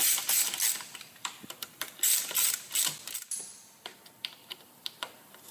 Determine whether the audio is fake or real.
fake